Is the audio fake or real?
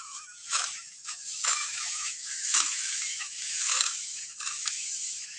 fake